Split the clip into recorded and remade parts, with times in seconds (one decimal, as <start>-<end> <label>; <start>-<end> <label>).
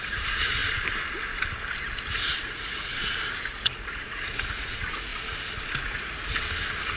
0.0-0.6 remade; 0.6-2.3 recorded; 2.3-5.1 remade; 5.1-5.8 recorded; 5.8-6.3 remade; 6.3-7.0 recorded